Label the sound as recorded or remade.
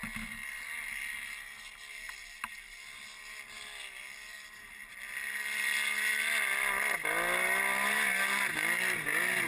recorded